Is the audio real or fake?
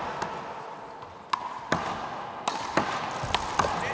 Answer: real